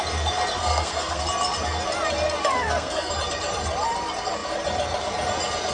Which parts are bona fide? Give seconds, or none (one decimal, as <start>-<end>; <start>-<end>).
0.0-0.6; 1.2-2.4; 3.1-5.7